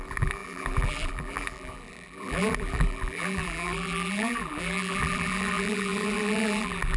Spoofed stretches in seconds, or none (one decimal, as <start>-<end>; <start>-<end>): 0.0-7.0